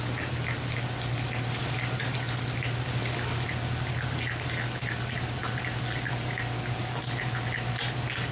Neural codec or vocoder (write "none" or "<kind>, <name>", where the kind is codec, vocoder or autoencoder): none